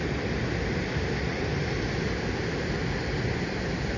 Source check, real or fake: real